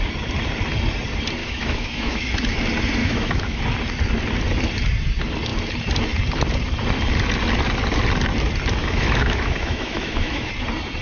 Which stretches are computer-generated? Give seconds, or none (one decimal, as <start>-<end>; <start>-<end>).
1.4-2.3; 3.0-3.6; 8.8-10.5